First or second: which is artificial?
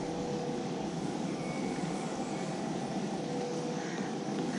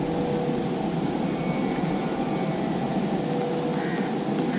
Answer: first